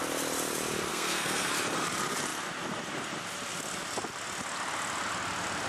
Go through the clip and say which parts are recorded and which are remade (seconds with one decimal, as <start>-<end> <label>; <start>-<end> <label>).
0.0-0.9 recorded; 0.9-1.5 remade; 1.5-5.7 recorded